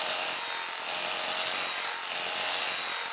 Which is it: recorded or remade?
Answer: recorded